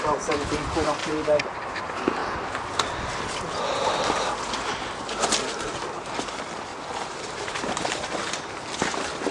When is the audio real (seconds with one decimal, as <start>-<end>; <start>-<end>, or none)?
0.0-1.0; 1.8-6.7; 8.1-9.3